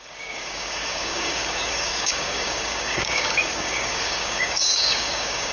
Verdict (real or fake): fake